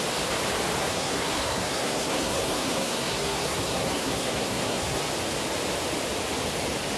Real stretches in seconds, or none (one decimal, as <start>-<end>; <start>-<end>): 0.0-0.8; 5.0-7.0